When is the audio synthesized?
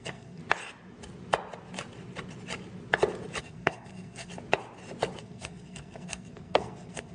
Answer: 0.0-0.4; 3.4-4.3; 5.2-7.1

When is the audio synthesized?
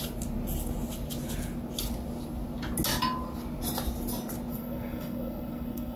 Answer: 4.5-6.0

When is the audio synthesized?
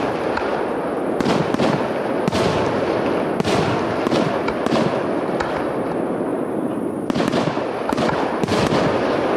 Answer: 6.3-6.9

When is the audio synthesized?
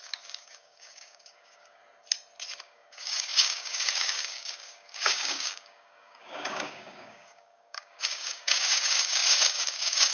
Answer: 0.0-1.8; 2.6-10.1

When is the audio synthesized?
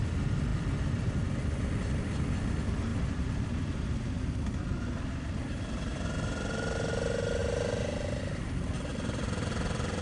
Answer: 0.5-1.1; 2.9-6.9; 8.9-10.0